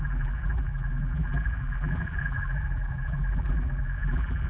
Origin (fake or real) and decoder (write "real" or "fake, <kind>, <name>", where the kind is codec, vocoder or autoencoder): fake, vocoder, BigVGAN v2